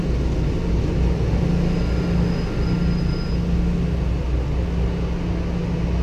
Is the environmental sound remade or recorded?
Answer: recorded